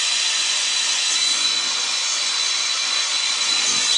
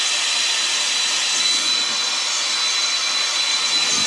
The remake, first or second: first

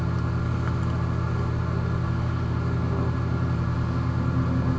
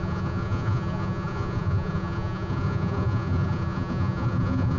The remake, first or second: second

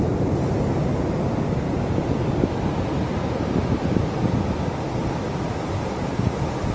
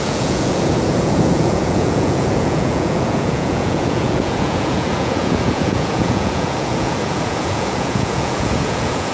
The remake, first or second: second